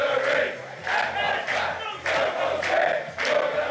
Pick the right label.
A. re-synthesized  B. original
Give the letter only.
B